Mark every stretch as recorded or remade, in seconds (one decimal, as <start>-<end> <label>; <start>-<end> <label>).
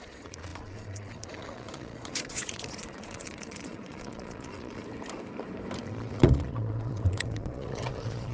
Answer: 0.0-4.8 remade; 4.8-5.8 recorded; 5.8-8.3 remade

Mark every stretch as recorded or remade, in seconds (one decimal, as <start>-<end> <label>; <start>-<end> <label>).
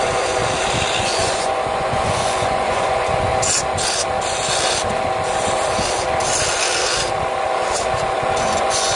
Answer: 0.0-0.4 remade; 0.4-1.0 recorded; 1.0-3.3 remade; 3.3-8.4 recorded; 8.4-9.0 remade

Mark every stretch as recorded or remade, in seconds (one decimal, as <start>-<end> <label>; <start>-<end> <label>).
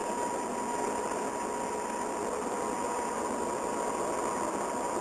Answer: 0.0-5.0 recorded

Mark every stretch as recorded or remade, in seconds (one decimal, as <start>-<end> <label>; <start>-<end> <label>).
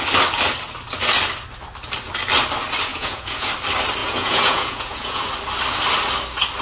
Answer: 0.0-2.9 recorded; 2.9-3.5 remade; 3.5-4.0 recorded; 4.0-5.2 remade; 5.2-6.6 recorded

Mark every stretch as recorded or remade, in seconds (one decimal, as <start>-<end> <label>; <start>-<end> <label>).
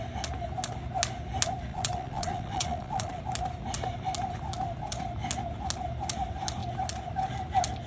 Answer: 0.0-1.7 recorded; 1.7-3.2 remade; 3.2-7.9 recorded